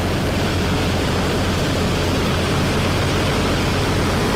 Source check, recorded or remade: recorded